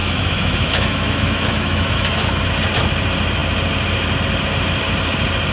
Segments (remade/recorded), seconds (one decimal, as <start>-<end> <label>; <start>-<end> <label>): 0.0-2.4 remade; 2.4-5.5 recorded